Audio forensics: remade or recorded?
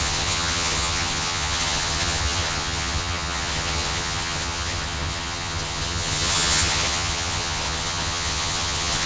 remade